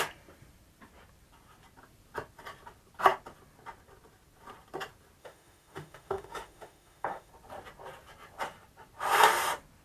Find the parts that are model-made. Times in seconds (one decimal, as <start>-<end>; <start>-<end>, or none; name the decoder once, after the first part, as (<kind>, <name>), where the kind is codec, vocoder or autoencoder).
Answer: 5.2-7.3 (autoencoder, DAC-VAE)